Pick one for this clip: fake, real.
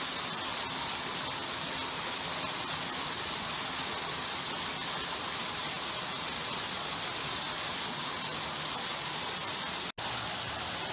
real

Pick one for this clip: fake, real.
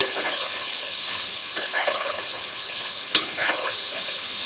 fake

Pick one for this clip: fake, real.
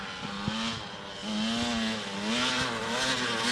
real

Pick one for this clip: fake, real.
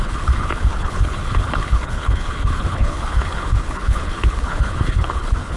fake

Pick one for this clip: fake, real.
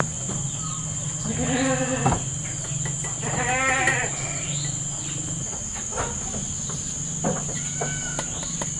real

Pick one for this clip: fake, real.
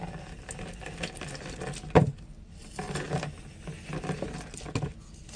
real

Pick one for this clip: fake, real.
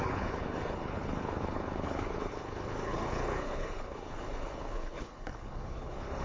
fake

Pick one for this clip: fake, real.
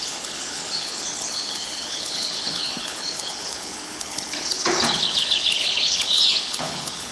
fake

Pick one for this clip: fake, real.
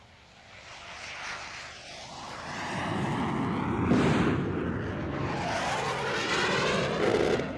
real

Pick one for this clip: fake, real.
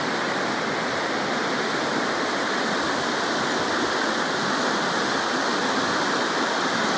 real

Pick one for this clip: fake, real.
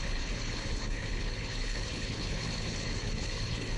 fake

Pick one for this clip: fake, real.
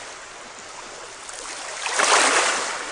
real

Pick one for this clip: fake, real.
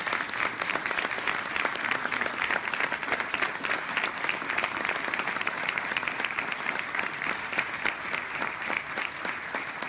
real